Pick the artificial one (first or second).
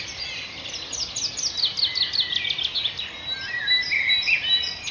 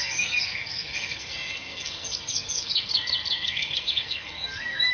second